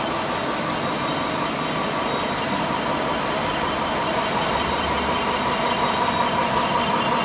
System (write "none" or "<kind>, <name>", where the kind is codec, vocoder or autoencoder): none